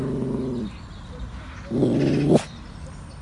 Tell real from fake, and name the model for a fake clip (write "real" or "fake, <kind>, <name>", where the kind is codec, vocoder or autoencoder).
real